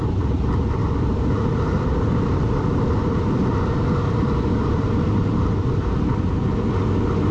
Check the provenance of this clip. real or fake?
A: real